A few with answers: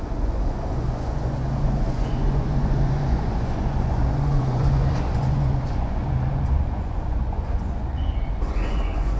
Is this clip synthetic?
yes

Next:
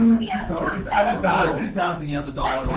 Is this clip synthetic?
yes